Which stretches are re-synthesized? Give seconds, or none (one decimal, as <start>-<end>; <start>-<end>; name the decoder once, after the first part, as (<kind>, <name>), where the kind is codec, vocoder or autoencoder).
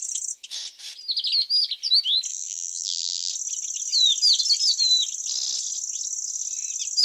2.3-3.3 (vocoder, BigVGAN v2)